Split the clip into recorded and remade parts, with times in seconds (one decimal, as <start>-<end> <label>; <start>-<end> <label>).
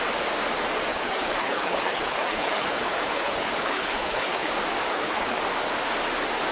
0.0-0.9 recorded; 0.9-4.5 remade; 4.5-4.9 recorded; 4.9-5.4 remade; 5.4-6.5 recorded